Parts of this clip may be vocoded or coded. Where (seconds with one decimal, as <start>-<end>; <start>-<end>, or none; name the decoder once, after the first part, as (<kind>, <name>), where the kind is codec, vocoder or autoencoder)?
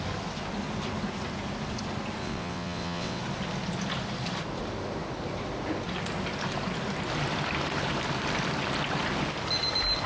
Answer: 2.2-3.2 (vocoder, WaveNeXt)